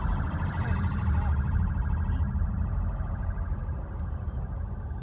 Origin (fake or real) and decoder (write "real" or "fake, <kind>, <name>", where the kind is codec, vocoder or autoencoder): real